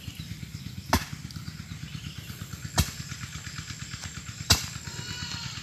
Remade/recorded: recorded